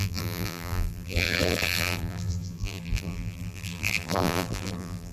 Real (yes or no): no